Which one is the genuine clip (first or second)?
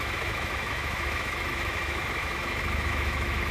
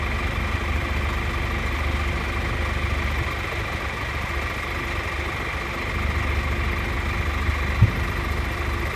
second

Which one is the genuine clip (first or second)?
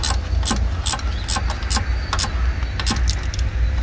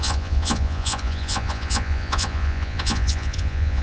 first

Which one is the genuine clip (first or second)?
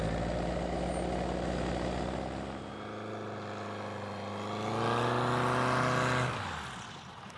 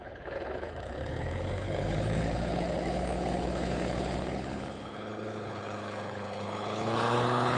first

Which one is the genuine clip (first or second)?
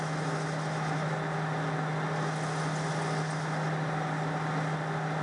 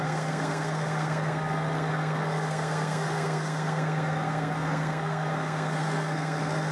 first